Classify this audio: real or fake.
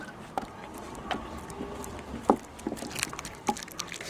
real